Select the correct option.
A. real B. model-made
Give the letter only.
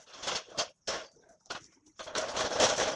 A